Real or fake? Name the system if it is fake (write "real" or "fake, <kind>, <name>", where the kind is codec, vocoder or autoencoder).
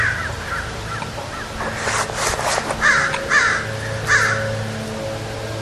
real